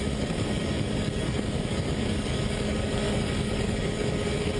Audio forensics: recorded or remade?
remade